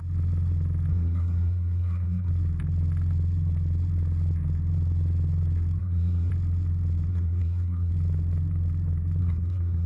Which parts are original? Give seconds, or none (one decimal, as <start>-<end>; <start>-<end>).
0.0-0.9; 2.3-5.8; 6.3-7.1; 7.9-9.2